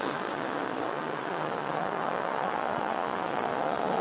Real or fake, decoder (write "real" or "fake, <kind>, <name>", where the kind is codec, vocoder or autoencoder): fake, vocoder, Vocos